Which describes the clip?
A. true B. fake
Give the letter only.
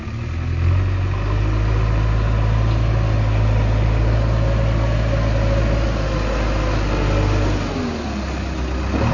A